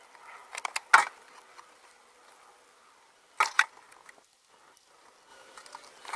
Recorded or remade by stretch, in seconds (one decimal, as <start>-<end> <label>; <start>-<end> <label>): 0.0-5.3 recorded; 5.3-6.2 remade